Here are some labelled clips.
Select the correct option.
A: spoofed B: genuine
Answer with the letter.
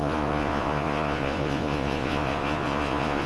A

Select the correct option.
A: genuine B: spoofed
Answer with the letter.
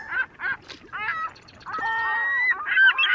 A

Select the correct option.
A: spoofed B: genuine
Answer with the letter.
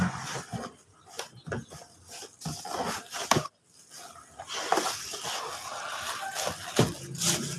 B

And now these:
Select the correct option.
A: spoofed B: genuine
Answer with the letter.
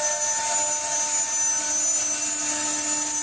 B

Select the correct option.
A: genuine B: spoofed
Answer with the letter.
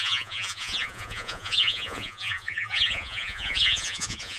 B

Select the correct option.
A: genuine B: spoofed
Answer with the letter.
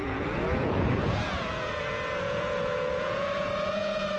B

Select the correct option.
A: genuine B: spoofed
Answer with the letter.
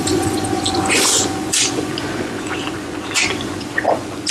B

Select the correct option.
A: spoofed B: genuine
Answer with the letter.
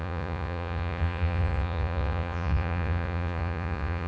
A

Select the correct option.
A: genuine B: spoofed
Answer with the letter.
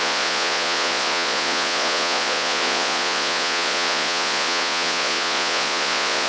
B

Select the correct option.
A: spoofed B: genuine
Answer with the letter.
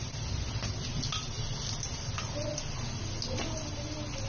B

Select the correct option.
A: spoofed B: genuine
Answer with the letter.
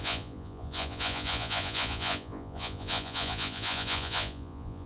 A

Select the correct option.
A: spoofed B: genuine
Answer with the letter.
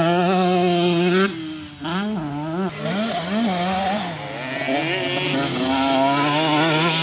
B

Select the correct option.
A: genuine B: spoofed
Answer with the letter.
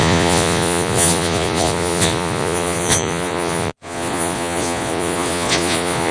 B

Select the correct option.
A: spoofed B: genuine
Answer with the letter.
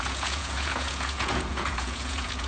A